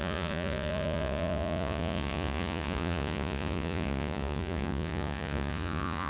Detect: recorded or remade remade